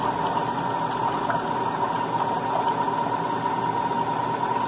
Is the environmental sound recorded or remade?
recorded